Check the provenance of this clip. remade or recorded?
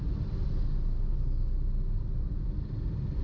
recorded